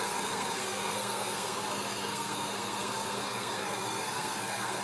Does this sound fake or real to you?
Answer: fake